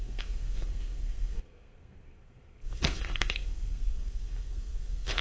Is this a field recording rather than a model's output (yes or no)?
no